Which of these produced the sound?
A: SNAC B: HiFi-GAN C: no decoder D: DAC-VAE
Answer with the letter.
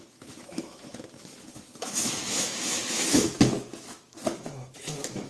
D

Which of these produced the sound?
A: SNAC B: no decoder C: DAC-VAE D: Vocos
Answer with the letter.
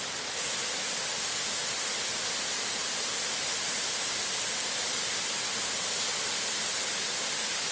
B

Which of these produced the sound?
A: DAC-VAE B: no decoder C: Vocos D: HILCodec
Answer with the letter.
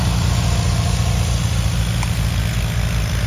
B